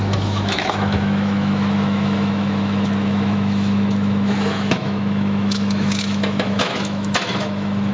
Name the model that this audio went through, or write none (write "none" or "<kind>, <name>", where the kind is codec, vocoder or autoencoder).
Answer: autoencoder, DAC-VAE